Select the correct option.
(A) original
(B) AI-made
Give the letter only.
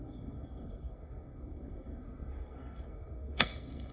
B